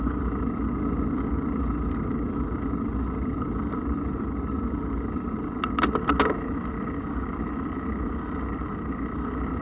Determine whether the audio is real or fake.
real